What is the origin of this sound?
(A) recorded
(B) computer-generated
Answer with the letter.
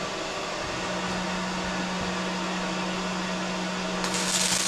A